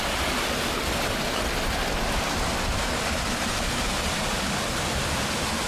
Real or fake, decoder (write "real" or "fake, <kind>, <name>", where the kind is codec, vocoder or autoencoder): real